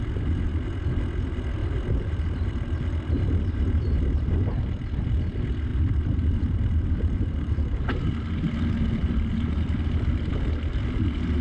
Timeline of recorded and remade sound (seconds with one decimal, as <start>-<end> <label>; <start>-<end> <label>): 0.0-1.6 recorded; 1.6-4.0 remade; 4.0-5.7 recorded; 5.7-7.7 remade; 7.7-11.4 recorded